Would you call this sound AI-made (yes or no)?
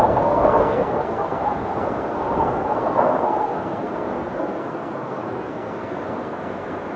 yes